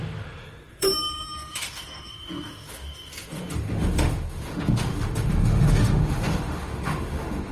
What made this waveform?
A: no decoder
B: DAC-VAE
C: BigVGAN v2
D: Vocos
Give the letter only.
B